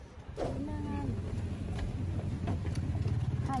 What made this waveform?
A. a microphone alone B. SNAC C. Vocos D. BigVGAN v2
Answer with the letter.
A